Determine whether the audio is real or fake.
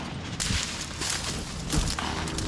real